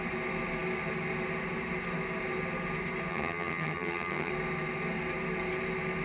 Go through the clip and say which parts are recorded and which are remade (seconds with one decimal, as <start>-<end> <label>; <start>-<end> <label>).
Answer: 0.0-3.1 recorded; 3.1-4.3 remade; 4.3-6.0 recorded